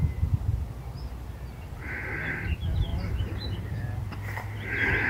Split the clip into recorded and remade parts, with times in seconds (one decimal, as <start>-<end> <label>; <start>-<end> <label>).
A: 0.0-5.1 recorded